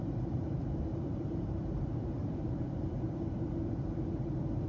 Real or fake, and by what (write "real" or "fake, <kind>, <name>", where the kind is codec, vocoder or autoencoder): fake, vocoder, BigVGAN v2